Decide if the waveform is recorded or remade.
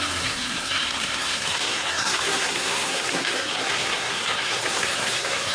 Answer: remade